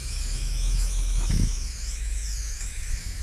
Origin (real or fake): fake